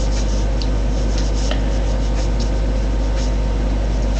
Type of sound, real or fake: real